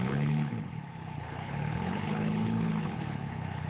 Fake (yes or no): yes